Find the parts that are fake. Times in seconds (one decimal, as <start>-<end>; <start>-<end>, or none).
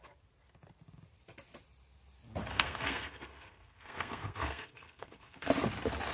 2.5-5.5